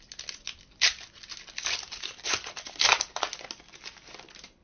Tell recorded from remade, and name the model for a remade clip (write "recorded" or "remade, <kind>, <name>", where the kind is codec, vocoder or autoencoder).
recorded